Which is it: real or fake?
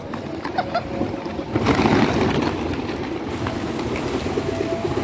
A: real